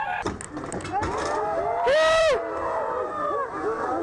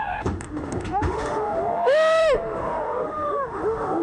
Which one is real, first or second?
first